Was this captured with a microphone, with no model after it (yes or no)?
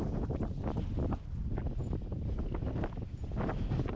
yes